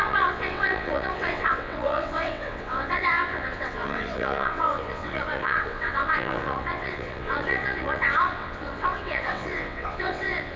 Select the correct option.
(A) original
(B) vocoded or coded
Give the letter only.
B